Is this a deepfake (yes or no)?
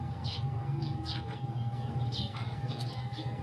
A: yes